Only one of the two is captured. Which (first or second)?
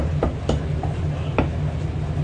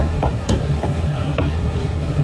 first